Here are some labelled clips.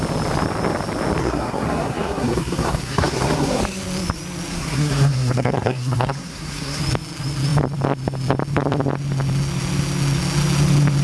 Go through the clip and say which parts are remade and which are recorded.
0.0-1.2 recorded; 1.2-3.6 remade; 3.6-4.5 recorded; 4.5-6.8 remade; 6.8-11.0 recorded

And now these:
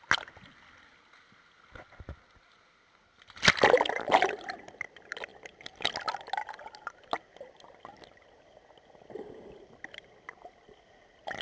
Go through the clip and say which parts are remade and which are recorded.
0.0-11.4 recorded

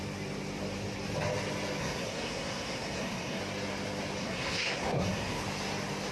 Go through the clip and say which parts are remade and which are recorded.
0.0-1.8 recorded; 1.8-3.4 remade; 3.4-4.2 recorded; 4.2-5.4 remade; 5.4-6.1 recorded

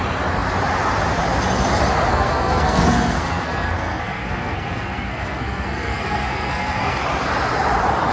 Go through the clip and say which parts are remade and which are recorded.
0.0-2.1 recorded; 2.1-7.0 remade; 7.0-8.1 recorded

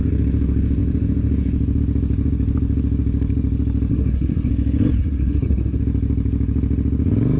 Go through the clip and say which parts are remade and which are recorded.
0.0-3.9 recorded; 3.9-4.5 remade; 4.5-5.0 recorded; 5.0-5.8 remade; 5.8-7.4 recorded

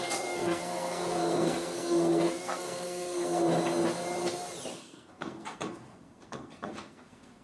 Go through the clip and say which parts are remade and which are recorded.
0.0-3.4 remade; 3.4-4.7 recorded; 4.7-7.4 remade

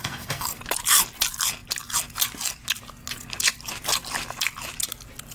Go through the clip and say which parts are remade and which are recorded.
0.0-0.6 remade; 0.6-5.3 recorded